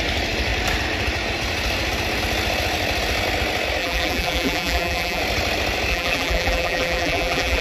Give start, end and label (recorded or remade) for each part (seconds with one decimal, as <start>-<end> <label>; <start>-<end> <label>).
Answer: 0.0-3.8 recorded; 3.8-5.2 remade; 5.2-5.9 recorded; 5.9-7.6 remade

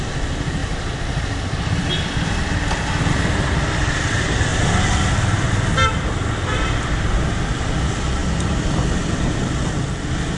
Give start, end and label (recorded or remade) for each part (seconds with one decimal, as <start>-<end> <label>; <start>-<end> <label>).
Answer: 0.0-0.6 recorded; 0.6-3.9 remade; 3.9-4.5 recorded; 4.5-5.1 remade; 5.1-10.4 recorded

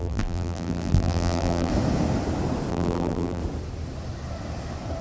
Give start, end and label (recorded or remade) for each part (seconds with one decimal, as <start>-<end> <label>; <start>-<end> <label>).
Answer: 0.0-1.7 remade; 1.7-2.7 recorded; 2.7-3.4 remade; 3.4-5.0 recorded